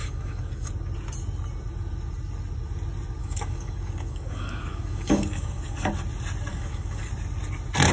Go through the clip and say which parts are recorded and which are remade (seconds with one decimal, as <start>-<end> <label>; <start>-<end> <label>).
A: 0.0-0.7 remade; 0.7-3.2 recorded; 3.2-5.9 remade; 5.9-6.5 recorded; 6.5-7.1 remade; 7.1-7.9 recorded